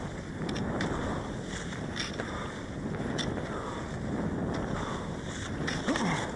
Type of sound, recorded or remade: recorded